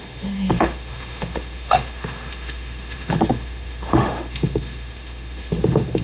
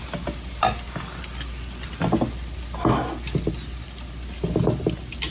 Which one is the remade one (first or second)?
first